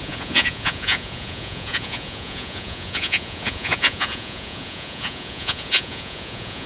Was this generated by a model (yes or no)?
yes